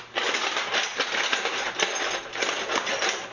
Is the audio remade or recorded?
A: recorded